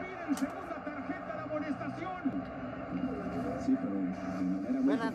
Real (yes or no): yes